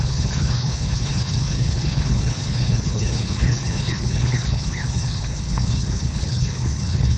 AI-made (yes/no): yes